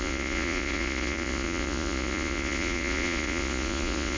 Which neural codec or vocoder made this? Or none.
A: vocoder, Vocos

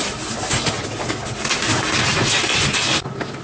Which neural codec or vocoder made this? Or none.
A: none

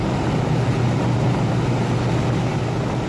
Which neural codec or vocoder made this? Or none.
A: none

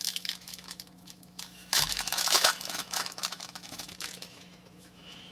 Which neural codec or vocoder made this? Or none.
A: autoencoder, DAC-VAE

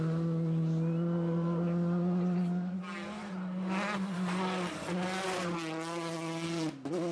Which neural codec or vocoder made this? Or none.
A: none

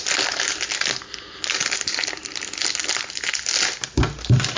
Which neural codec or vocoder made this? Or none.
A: none